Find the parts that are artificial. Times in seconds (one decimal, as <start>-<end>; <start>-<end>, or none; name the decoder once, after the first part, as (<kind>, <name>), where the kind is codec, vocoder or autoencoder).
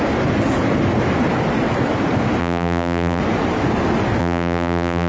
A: 2.4-3.2 (vocoder, BigVGAN v2); 4.2-5.1